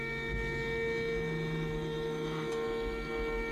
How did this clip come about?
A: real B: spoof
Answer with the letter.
A